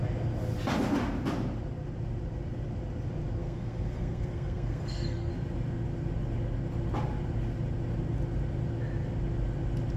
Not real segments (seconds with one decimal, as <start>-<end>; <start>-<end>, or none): 3.4-5.3